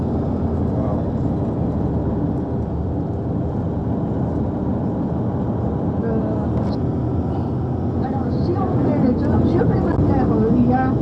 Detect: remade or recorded recorded